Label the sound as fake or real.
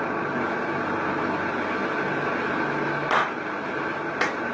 real